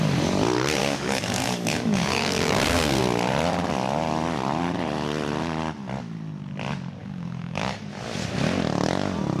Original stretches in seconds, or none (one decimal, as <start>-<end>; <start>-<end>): 0.0-0.8; 3.0-7.0; 7.9-9.4

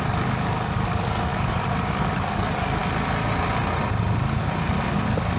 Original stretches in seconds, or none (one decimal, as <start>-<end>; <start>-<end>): 2.8-5.4